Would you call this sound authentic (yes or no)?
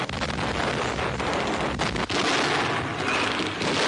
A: yes